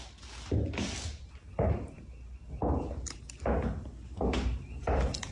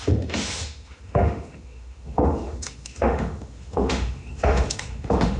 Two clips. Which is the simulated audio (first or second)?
second